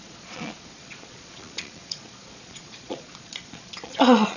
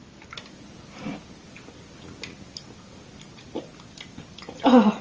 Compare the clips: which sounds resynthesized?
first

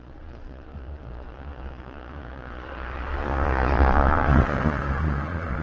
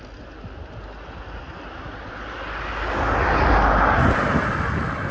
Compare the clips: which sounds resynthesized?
first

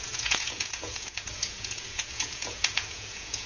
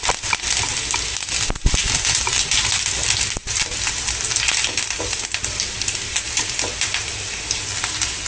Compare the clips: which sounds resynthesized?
first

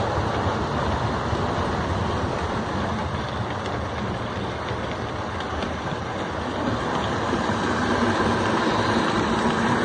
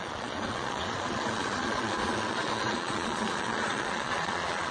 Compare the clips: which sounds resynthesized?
second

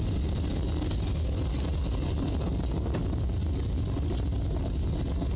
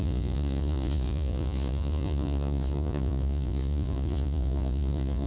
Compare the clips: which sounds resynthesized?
second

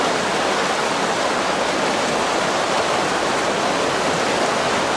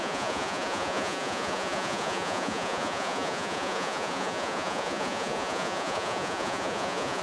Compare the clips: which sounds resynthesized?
second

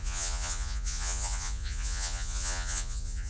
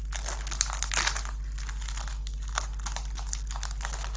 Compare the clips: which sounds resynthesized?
first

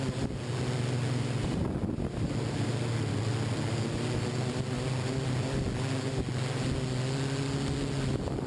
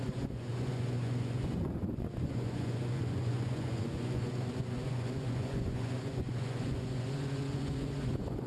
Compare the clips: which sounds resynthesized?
second